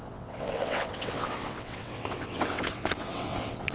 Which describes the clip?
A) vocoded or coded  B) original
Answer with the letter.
A